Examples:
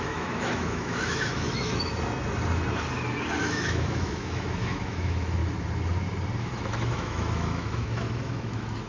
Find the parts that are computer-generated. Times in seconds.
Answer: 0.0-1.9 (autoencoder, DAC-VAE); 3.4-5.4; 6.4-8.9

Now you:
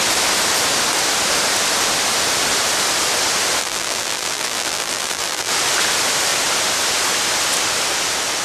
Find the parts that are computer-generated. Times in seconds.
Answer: 3.6-5.5 (vocoder, BigVGAN v2)

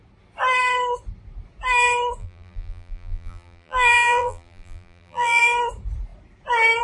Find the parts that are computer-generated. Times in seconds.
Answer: 2.2-5.4 (vocoder, BigVGAN v2)